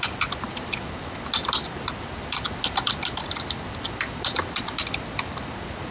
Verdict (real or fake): real